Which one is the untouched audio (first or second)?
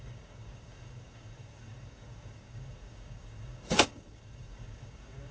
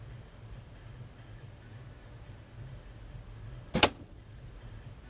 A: second